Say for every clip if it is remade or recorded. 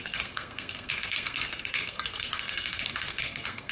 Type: remade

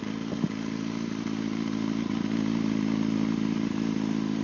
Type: recorded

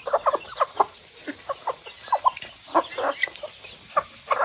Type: recorded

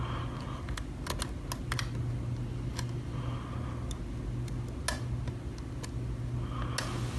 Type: recorded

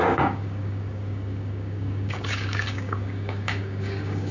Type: remade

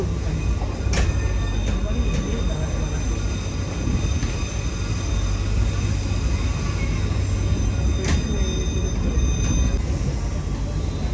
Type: recorded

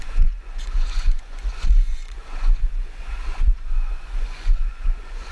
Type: remade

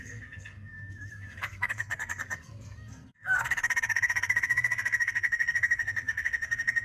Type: remade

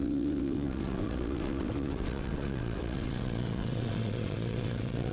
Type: remade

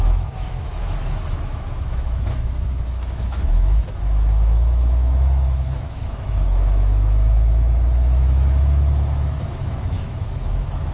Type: remade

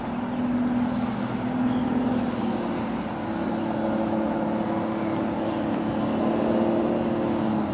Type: recorded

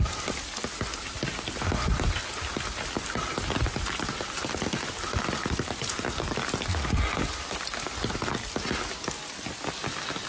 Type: recorded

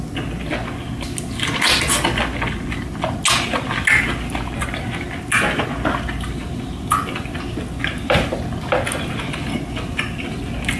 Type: recorded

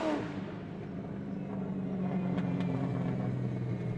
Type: recorded